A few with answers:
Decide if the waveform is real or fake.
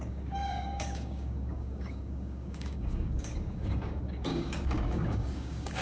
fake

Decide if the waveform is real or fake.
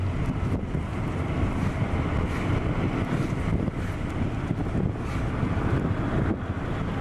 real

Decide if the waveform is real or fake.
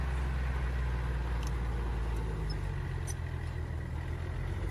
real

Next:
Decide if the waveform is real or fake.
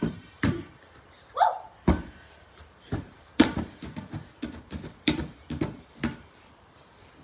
fake